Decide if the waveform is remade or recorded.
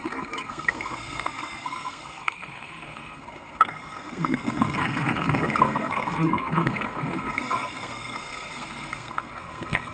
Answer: remade